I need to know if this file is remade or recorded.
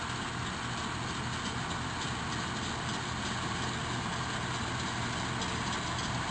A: recorded